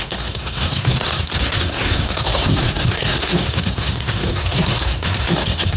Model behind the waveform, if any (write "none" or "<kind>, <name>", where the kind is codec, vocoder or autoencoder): codec, SNAC